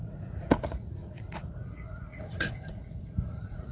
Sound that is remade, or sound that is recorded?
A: remade